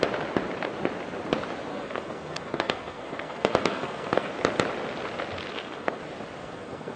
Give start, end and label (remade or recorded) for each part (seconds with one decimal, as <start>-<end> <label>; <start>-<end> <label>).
0.0-1.7 recorded; 1.7-4.3 remade; 4.3-5.5 recorded; 5.5-6.0 remade; 6.0-6.4 recorded; 6.4-7.0 remade